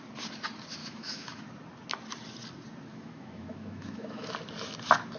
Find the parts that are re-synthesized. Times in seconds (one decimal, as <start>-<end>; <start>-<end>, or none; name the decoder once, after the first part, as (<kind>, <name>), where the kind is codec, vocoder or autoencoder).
0.8-1.4 (autoencoder, DAC-VAE); 2.9-4.3